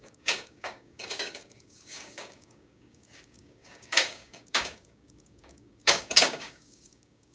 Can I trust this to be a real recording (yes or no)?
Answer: no